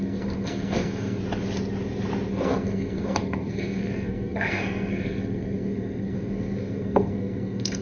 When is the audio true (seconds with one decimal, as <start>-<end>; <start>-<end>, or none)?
1.2-2.3